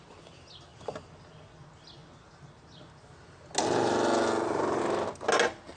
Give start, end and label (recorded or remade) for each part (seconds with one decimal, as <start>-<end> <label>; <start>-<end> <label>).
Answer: 0.0-5.8 recorded